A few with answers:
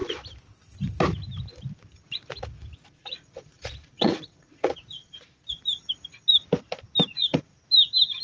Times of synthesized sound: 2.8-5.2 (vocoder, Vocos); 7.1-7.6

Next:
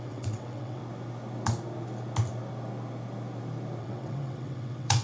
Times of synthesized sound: 0.0-0.8 (vocoder, WaveNeXt); 3.8-5.0

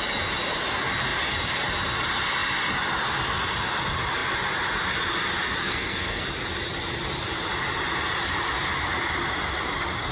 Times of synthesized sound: 5.6-6.2 (codec, SNAC)

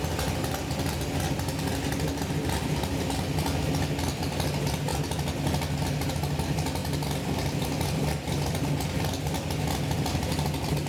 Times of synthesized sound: none

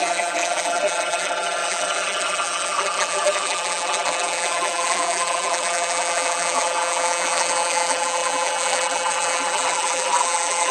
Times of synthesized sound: 0.0-10.7 (vocoder, BigVGAN v2)